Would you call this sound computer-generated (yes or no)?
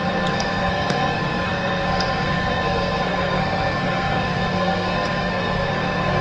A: yes